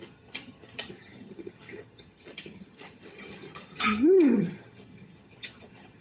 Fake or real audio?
fake